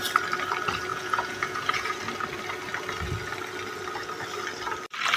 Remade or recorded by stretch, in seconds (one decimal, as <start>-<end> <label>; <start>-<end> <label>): 0.0-0.9 recorded; 0.9-2.0 remade; 2.0-5.2 recorded